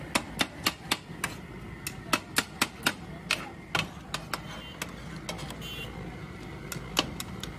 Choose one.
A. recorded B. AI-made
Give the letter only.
A